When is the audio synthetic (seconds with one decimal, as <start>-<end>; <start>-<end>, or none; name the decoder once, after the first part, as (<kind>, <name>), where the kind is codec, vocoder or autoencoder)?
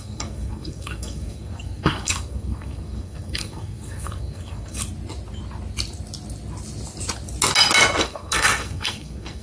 0.0-4.8 (codec, SNAC); 8.0-9.4